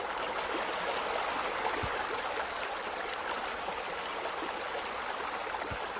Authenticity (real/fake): real